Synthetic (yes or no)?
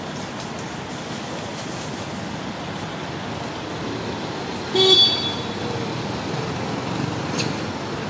no